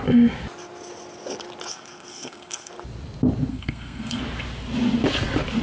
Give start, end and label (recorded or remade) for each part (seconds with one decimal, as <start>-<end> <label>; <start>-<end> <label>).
0.0-1.7 recorded; 1.7-2.7 remade; 2.7-3.5 recorded; 3.5-4.2 remade; 4.2-5.6 recorded